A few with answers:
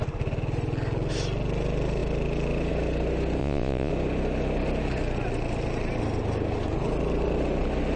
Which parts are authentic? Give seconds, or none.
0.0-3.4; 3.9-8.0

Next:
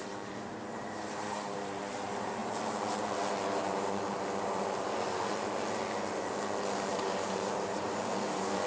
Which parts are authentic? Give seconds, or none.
1.8-6.9; 8.0-8.7

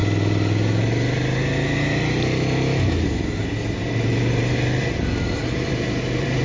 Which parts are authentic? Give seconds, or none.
0.0-3.7

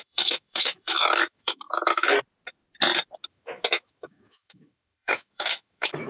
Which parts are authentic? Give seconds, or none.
2.1-3.3